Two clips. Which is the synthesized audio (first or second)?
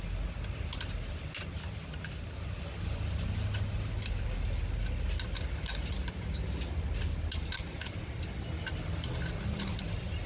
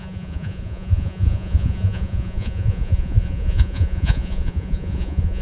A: second